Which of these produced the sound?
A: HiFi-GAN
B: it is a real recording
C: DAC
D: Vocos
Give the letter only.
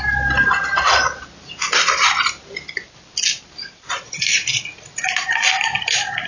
B